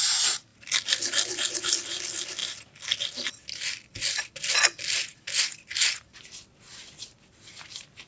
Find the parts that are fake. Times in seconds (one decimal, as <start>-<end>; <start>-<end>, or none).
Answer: none